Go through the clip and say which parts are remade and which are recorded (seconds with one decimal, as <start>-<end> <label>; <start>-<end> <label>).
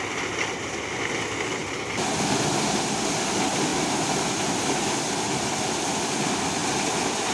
0.0-7.3 recorded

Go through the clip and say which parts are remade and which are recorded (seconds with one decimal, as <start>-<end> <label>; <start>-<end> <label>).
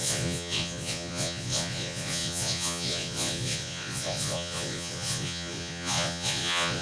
0.0-6.8 remade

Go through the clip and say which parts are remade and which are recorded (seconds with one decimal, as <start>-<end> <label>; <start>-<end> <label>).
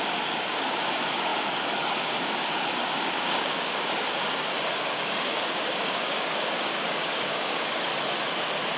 0.0-7.9 remade; 7.9-8.8 recorded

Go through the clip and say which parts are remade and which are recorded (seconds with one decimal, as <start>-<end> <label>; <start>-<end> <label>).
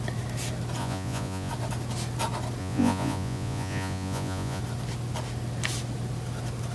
0.0-0.8 recorded; 0.8-1.5 remade; 1.5-2.6 recorded; 2.6-4.6 remade; 4.6-6.7 recorded